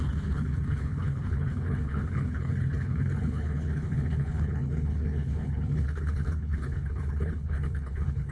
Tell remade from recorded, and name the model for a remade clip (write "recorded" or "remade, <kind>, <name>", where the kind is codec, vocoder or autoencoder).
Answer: remade, codec, HILCodec